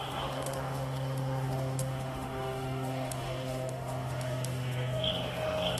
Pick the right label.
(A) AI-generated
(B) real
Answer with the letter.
A